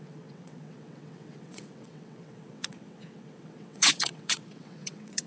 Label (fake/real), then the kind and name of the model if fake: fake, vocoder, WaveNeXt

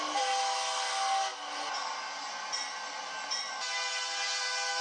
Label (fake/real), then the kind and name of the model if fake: real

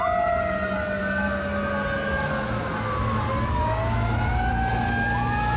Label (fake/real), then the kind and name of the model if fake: real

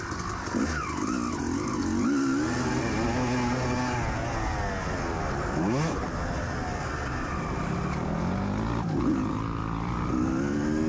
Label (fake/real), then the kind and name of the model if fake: real